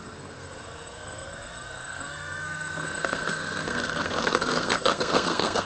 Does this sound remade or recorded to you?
remade